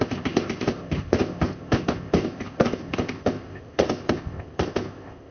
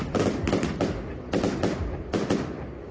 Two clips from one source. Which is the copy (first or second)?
first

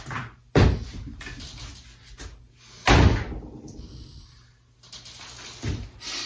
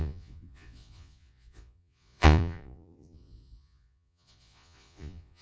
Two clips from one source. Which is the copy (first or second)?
second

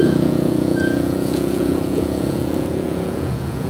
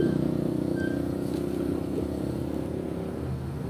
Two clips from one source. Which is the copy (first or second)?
first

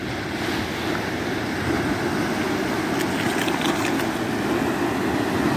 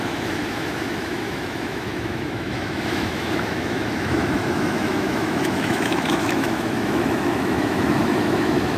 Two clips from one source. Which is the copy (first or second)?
second